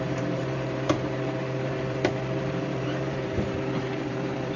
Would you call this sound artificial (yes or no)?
yes